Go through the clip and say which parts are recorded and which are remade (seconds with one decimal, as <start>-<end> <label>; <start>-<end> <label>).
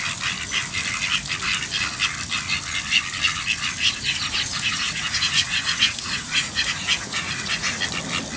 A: 0.0-3.8 recorded; 3.8-7.8 remade; 7.8-8.4 recorded